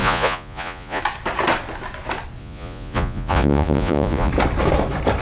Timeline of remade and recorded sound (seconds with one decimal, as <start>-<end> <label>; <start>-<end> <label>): 0.0-1.0 remade; 1.0-2.4 recorded; 2.4-4.3 remade; 4.3-5.2 recorded